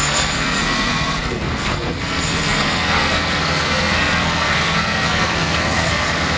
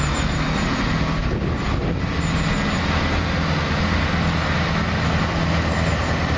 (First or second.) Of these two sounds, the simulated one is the first